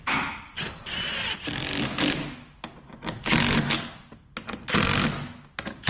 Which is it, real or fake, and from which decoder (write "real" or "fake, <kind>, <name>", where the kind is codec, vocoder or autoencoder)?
real